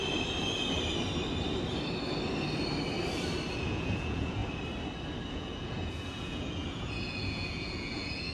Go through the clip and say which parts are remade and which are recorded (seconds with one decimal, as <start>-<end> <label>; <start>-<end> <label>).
0.0-3.6 recorded; 3.6-4.4 remade; 4.4-5.3 recorded; 5.3-8.3 remade